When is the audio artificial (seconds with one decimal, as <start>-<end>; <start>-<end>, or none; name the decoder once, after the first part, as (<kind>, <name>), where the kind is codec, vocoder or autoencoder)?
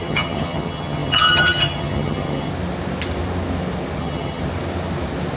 0.0-2.5 (vocoder, HiFi-GAN); 4.0-4.4